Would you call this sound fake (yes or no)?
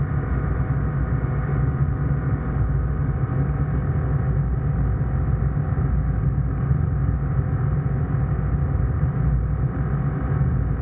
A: no